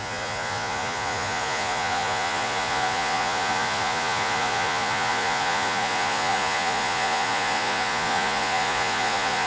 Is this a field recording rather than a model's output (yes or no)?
no